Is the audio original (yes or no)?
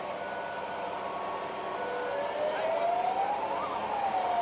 yes